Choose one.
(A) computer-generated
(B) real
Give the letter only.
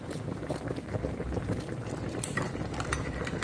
B